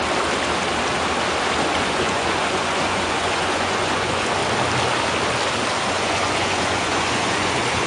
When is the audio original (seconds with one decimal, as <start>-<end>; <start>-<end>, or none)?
0.0-1.8; 4.4-5.9